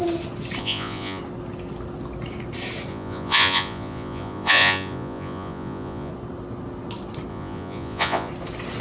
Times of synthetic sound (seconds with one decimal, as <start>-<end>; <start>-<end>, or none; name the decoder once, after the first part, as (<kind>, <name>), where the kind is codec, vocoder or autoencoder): 0.6-1.2 (vocoder, Vocos); 2.9-6.1; 7.3-8.3